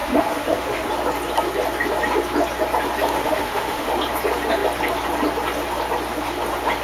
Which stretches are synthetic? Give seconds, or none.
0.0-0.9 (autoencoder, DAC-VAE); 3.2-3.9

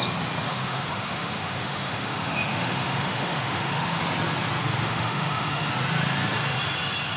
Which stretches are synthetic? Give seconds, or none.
0.5-4.0 (autoencoder, DAC-VAE); 4.6-5.7

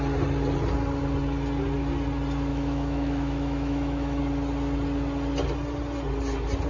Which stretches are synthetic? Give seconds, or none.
2.5-4.2 (autoencoder, DAC-VAE)

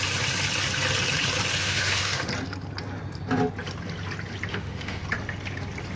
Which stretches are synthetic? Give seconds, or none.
1.6-2.3 (autoencoder, DAC-VAE); 4.5-5.0

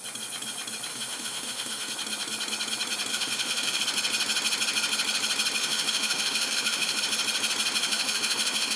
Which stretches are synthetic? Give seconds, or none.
0.9-1.9 (autoencoder, DAC-VAE); 3.1-3.8; 5.6-7.0; 7.8-8.8

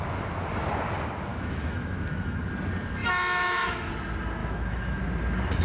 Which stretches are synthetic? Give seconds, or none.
1.3-2.4 (autoencoder, DAC-VAE); 3.0-3.9; 4.4-5.0